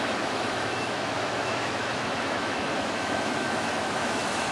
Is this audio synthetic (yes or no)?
yes